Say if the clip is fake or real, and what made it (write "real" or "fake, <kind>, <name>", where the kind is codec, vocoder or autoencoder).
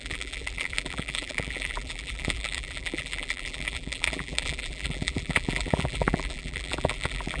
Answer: fake, vocoder, BigVGAN v2